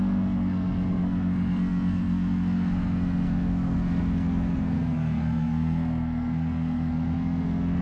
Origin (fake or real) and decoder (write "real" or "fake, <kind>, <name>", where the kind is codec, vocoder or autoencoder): fake, codec, SNAC